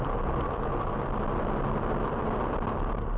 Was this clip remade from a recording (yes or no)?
no